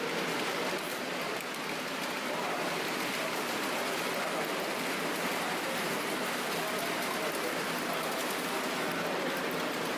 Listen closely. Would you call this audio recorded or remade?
recorded